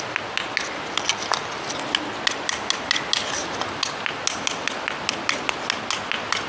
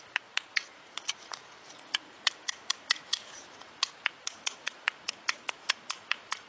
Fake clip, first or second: second